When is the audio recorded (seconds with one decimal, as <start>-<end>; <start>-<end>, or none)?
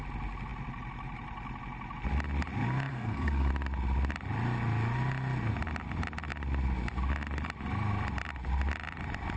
0.0-2.9; 3.5-9.4